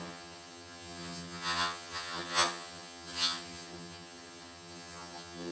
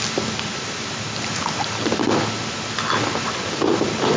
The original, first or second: second